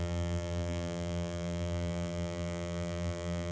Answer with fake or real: fake